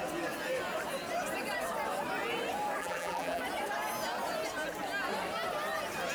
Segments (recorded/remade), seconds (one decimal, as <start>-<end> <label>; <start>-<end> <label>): 0.0-2.8 recorded; 2.8-3.4 remade; 3.4-6.1 recorded